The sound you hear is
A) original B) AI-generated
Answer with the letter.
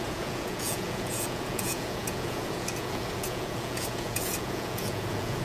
B